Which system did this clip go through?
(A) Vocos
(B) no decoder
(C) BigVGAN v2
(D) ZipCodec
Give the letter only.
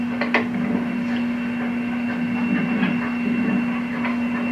B